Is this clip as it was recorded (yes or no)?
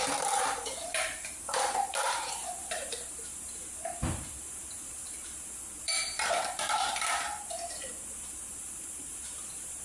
no